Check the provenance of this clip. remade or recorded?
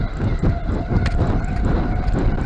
recorded